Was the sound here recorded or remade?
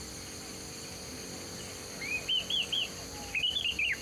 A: recorded